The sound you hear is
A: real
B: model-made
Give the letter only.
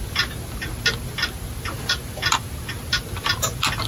A